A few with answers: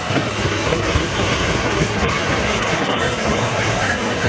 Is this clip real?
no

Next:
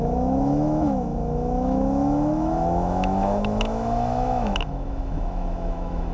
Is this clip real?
no